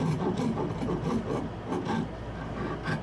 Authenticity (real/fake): real